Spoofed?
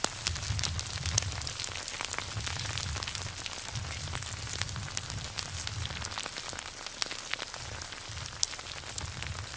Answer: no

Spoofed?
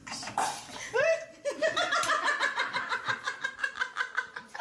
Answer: yes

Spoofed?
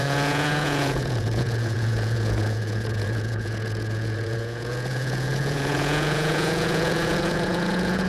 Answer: yes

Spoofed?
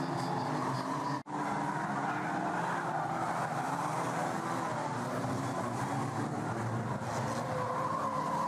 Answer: no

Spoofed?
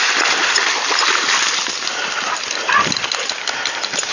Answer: yes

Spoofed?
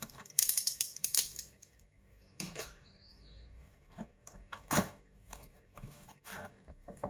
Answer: yes